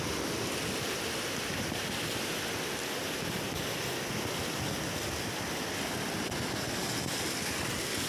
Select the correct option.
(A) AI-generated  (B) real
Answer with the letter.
B